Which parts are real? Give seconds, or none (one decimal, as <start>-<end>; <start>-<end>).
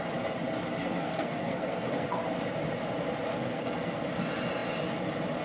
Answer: 0.0-0.8; 2.2-3.3; 4.0-5.4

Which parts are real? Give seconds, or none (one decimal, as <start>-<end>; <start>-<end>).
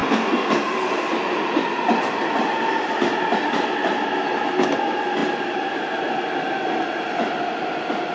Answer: 0.5-8.1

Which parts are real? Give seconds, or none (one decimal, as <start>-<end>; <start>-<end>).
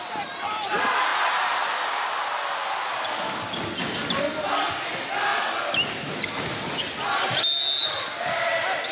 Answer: 0.0-8.9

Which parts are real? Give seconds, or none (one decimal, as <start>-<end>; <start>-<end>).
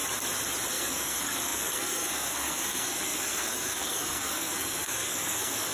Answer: 0.0-0.7